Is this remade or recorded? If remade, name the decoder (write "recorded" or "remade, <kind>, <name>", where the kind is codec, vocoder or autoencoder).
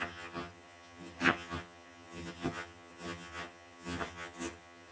remade, vocoder, HiFi-GAN